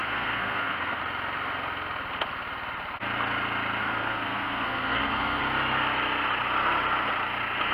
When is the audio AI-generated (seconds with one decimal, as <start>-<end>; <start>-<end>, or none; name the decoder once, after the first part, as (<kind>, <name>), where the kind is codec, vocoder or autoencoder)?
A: 0.0-1.0 (codec, SNAC); 3.8-5.4